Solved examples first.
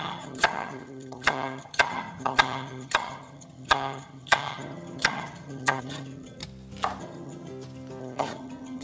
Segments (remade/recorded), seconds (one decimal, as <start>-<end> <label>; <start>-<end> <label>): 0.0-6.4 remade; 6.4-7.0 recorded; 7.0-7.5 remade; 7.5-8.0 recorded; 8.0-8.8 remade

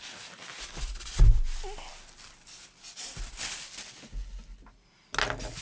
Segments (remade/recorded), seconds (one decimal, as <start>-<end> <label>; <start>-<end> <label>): 0.0-5.6 recorded

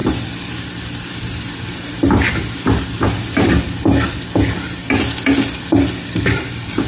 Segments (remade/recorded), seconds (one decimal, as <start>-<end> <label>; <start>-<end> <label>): 0.0-2.0 remade; 2.0-6.9 recorded

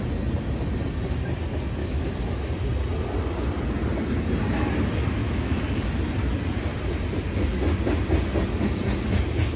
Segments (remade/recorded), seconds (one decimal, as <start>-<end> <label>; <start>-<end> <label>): 0.0-1.8 recorded; 1.8-2.5 remade; 2.5-5.2 recorded; 5.2-5.9 remade; 5.9-9.6 recorded

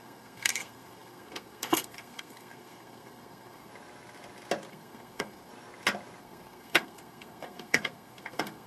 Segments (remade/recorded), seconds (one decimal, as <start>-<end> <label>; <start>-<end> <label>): 0.0-3.7 remade; 3.7-4.7 recorded; 4.7-5.5 remade; 5.5-6.2 recorded; 6.2-8.7 remade

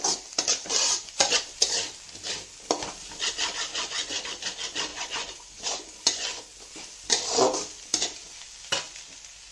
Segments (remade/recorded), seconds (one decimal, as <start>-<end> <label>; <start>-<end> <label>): 0.0-0.8 recorded; 0.8-1.4 remade; 1.4-3.7 recorded; 3.7-4.2 remade; 4.2-4.9 recorded; 4.9-6.4 remade; 6.4-9.5 recorded